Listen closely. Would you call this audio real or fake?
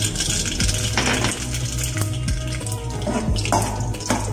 real